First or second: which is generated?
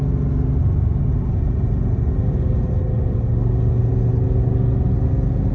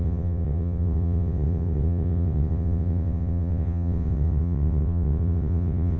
second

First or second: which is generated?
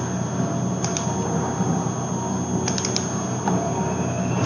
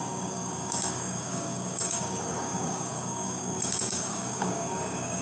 second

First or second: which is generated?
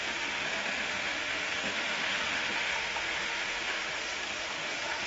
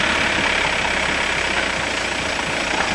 first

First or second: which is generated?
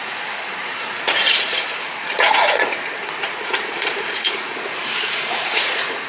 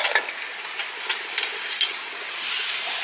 first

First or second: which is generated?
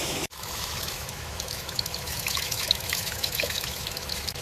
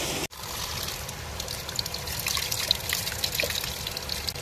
first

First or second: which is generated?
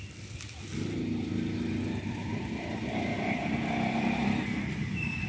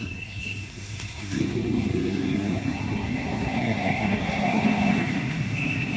second